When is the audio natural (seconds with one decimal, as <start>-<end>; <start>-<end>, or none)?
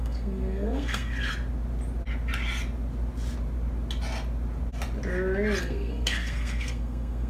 1.3-5.6